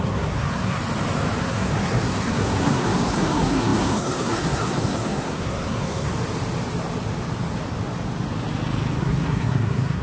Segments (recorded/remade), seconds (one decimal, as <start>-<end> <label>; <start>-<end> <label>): 0.0-0.8 remade; 0.8-1.4 recorded; 1.4-6.1 remade; 6.1-9.0 recorded; 9.0-10.0 remade